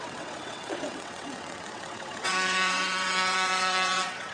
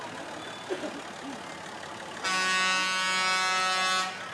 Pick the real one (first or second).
second